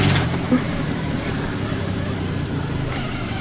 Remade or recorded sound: remade